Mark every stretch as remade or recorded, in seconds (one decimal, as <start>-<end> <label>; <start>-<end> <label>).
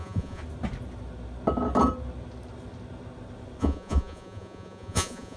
0.0-0.4 remade; 0.4-3.6 recorded; 3.6-5.4 remade